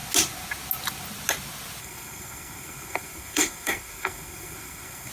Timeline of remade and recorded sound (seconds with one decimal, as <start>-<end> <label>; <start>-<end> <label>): 0.0-1.8 recorded; 1.8-5.1 remade